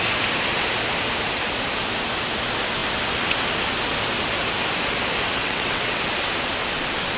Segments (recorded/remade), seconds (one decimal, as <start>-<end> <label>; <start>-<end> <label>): 0.0-5.4 recorded; 5.4-6.0 remade; 6.0-7.2 recorded